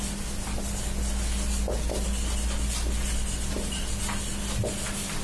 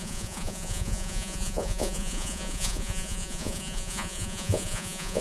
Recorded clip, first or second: first